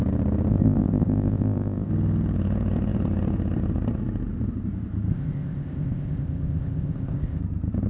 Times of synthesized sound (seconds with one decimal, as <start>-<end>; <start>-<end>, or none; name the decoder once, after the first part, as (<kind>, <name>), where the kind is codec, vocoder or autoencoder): 0.5-1.9 (codec, ZipCodec); 5.1-7.4